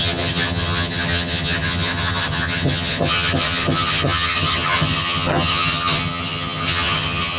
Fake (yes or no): yes